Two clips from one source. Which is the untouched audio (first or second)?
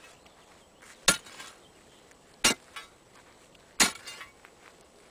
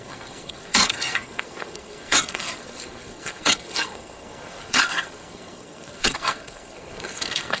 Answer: first